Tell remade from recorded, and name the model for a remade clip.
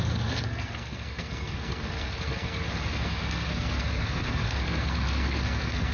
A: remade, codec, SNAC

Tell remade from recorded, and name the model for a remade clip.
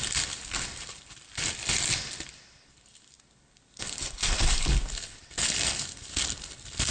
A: recorded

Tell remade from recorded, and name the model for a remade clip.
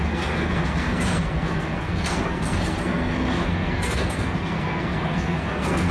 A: remade, codec, SNAC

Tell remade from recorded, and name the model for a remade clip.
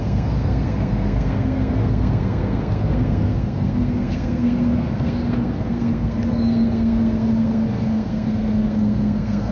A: remade, codec, SNAC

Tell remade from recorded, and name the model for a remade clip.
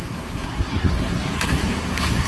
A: remade, codec, SNAC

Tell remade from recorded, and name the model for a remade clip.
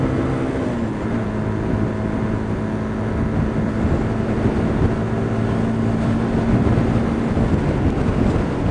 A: recorded